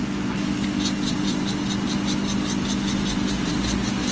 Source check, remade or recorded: recorded